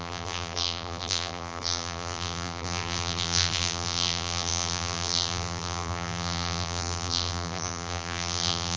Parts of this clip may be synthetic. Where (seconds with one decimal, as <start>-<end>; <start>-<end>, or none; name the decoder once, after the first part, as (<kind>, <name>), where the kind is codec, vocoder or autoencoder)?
0.0-8.8 (vocoder, BigVGAN v2)